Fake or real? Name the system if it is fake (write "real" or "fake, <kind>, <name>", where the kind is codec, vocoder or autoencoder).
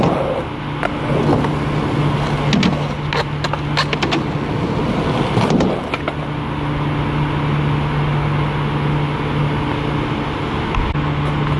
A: real